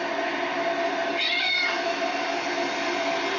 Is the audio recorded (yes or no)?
yes